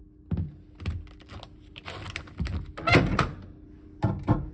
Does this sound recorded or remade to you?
recorded